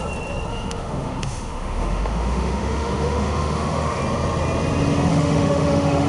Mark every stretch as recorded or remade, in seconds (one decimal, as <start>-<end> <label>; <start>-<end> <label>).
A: 0.0-0.5 recorded; 0.5-4.0 remade; 4.0-5.1 recorded; 5.1-6.1 remade